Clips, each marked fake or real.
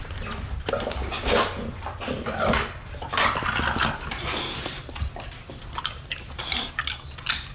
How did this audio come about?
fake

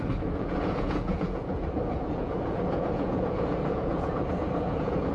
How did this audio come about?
fake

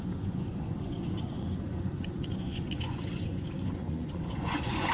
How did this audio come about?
fake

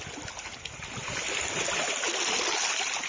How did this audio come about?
real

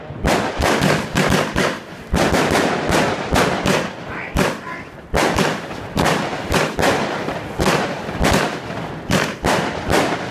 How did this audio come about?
real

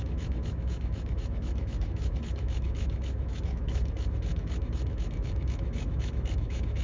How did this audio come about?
fake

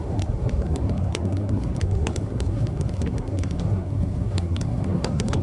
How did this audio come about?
fake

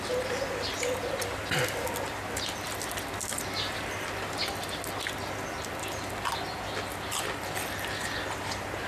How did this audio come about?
real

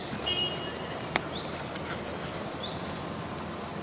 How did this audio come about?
real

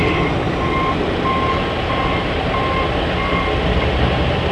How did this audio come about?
real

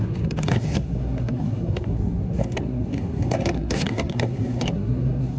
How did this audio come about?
fake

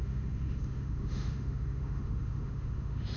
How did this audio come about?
fake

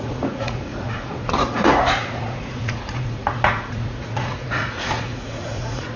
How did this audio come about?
fake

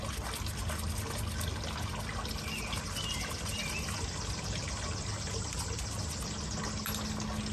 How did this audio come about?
real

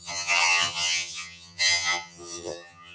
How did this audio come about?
fake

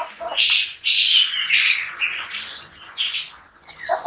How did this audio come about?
fake